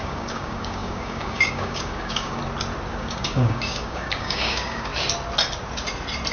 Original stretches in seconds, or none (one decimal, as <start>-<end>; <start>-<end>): 2.4-2.9; 4.9-6.3